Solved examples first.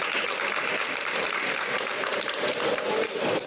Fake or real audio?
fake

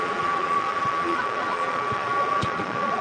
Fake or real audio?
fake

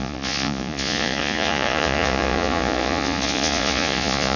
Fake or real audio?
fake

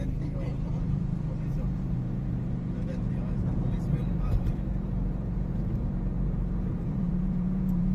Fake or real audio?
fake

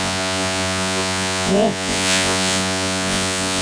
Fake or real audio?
fake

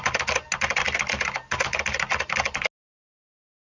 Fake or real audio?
real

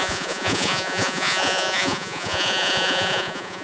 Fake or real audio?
fake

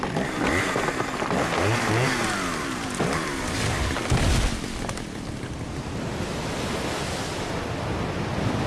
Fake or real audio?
real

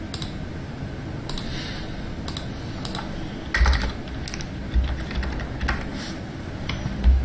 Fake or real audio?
real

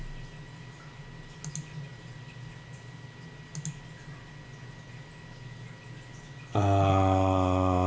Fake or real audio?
real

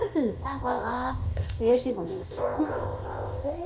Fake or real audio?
fake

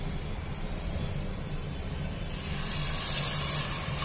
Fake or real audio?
fake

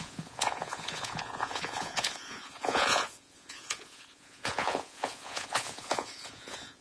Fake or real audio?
fake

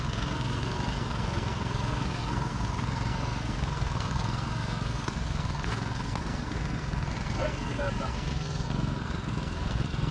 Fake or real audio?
fake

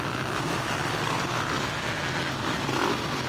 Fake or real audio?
real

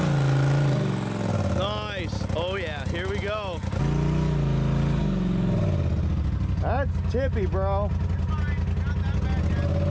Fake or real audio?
real